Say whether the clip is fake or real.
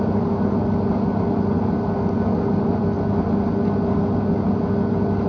real